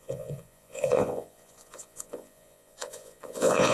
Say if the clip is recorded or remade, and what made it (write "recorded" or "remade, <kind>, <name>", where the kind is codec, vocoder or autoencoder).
remade, vocoder, Vocos